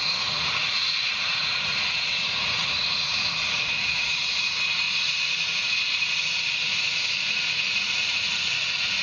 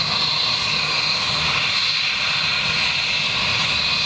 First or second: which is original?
second